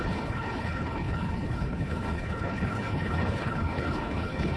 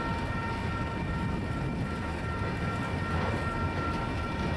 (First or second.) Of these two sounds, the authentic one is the second